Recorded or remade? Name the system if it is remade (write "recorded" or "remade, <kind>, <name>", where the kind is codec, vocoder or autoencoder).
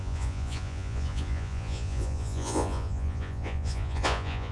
remade, vocoder, Vocos